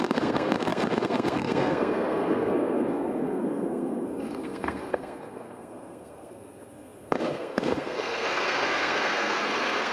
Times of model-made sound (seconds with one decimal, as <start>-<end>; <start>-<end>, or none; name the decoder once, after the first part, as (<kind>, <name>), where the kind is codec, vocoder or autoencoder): 0.0-9.9 (codec, SNAC)